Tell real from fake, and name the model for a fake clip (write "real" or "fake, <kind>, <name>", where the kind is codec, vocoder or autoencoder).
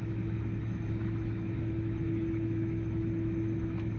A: fake, autoencoder, DAC-VAE